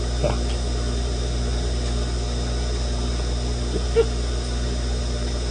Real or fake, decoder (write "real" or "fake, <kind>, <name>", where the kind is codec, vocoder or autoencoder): real